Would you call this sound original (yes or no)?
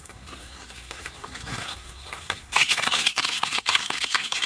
no